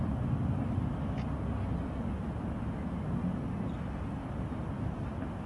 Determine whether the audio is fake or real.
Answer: real